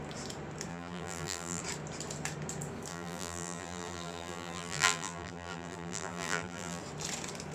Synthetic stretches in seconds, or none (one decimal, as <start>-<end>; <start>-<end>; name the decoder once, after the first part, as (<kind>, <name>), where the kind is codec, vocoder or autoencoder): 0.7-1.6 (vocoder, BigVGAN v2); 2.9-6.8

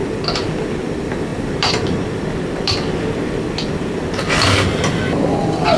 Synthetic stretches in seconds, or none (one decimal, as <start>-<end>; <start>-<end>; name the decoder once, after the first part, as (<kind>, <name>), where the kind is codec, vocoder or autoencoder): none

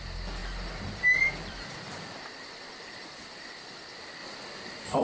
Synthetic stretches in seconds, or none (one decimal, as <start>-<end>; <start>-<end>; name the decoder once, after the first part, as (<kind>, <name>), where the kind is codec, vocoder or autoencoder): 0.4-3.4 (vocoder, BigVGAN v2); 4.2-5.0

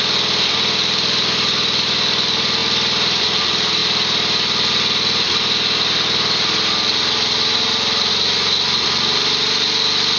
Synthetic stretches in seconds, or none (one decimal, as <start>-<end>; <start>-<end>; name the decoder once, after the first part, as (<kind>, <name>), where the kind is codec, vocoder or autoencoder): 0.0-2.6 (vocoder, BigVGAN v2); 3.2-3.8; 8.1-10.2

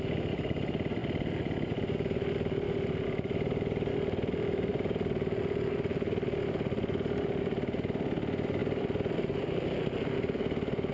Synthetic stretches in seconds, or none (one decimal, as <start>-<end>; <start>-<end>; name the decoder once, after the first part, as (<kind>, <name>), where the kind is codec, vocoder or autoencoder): 4.7-5.7 (vocoder, BigVGAN v2); 8.6-10.9

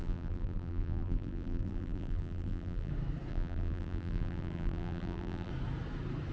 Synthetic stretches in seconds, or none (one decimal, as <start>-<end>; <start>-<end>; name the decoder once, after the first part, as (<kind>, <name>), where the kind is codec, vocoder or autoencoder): 0.0-2.9 (vocoder, BigVGAN v2); 3.3-5.5